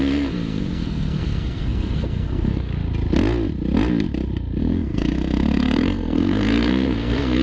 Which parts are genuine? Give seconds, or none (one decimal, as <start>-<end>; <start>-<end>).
2.7-4.6